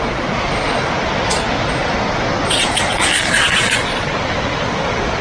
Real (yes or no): yes